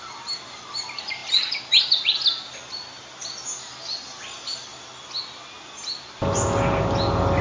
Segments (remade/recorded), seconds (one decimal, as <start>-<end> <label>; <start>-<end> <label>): 0.0-7.4 recorded